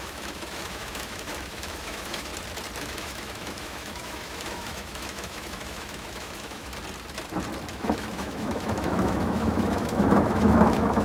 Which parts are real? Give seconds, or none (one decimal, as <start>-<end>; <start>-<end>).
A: 2.3-2.8; 6.7-7.7